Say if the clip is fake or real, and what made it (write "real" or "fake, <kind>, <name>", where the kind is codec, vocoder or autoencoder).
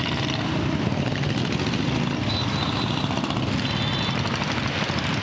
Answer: real